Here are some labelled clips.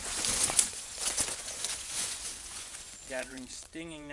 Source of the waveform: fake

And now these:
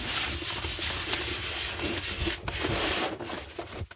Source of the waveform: real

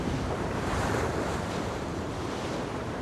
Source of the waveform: fake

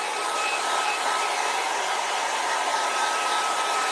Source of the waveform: fake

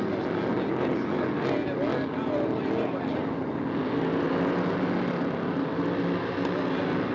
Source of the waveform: real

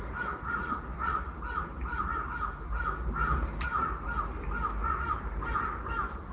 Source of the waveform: real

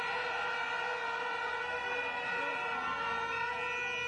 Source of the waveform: real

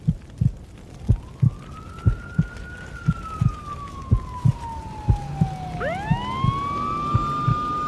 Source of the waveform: real